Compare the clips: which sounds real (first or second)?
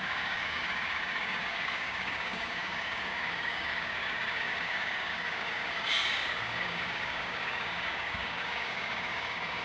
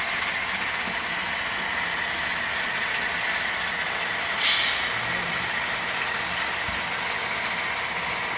second